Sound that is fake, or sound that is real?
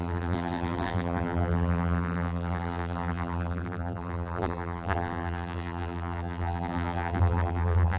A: fake